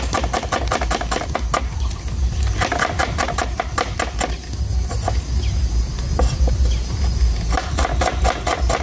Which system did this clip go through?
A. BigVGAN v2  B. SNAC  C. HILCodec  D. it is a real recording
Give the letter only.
D